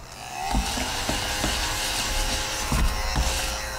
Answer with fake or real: real